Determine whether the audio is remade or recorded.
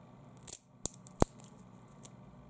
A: recorded